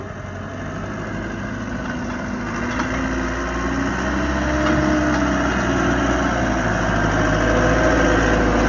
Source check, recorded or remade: recorded